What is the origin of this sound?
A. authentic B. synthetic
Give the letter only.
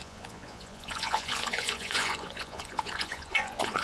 B